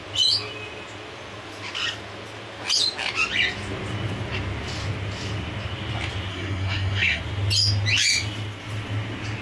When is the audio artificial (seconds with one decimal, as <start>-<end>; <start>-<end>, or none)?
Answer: 6.3-7.2